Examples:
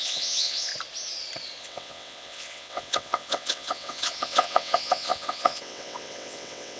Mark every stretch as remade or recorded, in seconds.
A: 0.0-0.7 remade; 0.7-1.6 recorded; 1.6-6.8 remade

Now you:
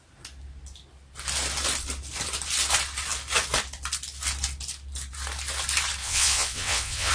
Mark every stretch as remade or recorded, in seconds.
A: 0.0-6.0 recorded; 6.0-7.1 remade

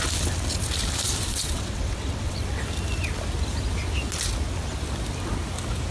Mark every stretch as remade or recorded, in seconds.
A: 0.0-1.3 recorded; 1.3-2.6 remade; 2.6-5.9 recorded

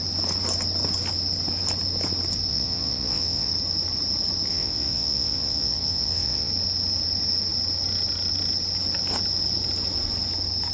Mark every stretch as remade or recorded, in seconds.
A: 0.0-2.5 recorded; 2.5-3.5 remade; 3.5-4.5 recorded; 4.5-6.5 remade; 6.5-10.7 recorded

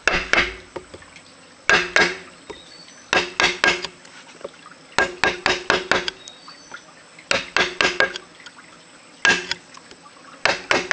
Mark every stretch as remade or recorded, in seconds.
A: 0.0-10.9 recorded

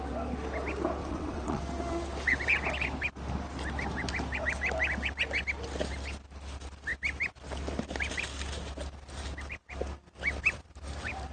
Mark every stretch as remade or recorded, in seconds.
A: 0.0-1.0 recorded; 1.0-1.6 remade; 1.6-11.3 recorded

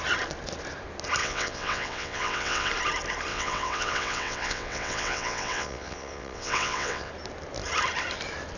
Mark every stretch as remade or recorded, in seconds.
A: 0.0-1.2 recorded; 1.2-2.7 remade; 2.7-3.3 recorded; 3.3-7.1 remade; 7.1-8.6 recorded